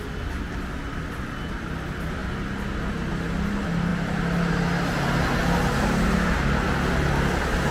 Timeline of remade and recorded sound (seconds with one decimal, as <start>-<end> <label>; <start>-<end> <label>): 0.0-7.7 recorded